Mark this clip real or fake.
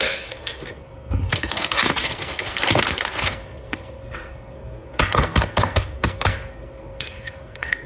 fake